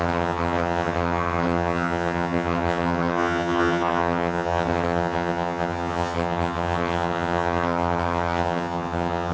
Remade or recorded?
remade